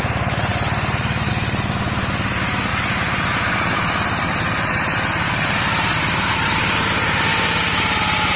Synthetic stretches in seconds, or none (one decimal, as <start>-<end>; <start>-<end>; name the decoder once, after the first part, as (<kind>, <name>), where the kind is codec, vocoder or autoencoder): 0.5-1.3 (vocoder, BigVGAN v2); 5.9-6.5; 7.3-8.0

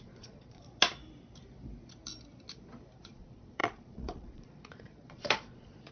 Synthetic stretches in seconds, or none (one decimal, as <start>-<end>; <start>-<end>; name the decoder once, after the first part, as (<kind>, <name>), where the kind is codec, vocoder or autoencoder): 0.0-0.6 (vocoder, Vocos); 3.0-5.9

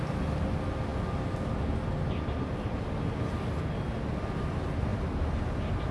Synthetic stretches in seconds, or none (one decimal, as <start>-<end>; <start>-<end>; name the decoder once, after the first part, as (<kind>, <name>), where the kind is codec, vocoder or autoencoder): 0.0-0.9 (vocoder, BigVGAN v2); 4.4-5.9

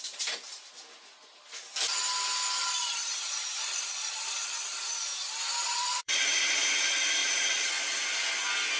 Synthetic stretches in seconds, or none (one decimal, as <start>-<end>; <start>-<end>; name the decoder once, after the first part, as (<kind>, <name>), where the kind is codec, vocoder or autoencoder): 2.6-4.8 (vocoder, Vocos); 5.6-6.7; 7.2-7.7

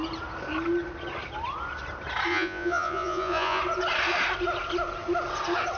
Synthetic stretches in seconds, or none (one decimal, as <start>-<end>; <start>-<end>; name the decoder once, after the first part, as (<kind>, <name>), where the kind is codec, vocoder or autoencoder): 2.3-3.6 (vocoder, Vocos)